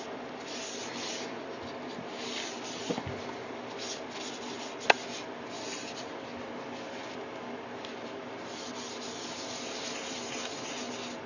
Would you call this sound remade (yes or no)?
no